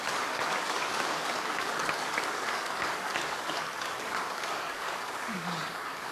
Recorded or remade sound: remade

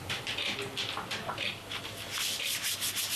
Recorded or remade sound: recorded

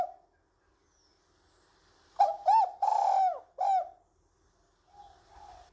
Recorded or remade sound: recorded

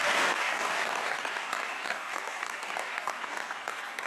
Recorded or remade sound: remade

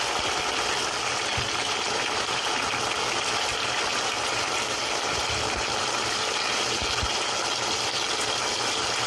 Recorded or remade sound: recorded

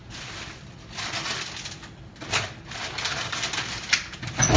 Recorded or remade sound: recorded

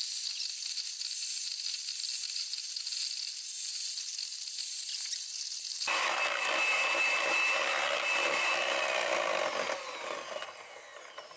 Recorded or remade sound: recorded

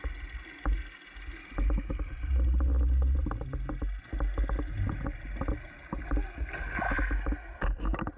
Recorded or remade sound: recorded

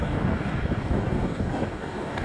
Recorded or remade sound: remade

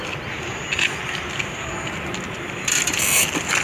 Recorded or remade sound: recorded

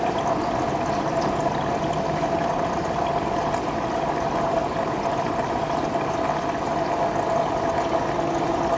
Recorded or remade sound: recorded